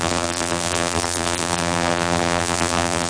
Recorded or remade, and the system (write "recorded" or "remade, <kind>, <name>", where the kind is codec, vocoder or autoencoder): remade, vocoder, BigVGAN v2